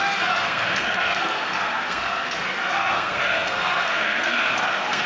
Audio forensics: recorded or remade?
remade